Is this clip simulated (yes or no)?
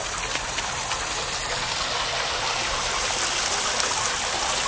yes